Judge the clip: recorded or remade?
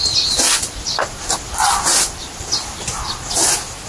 recorded